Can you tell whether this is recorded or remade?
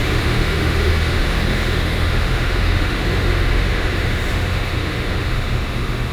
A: remade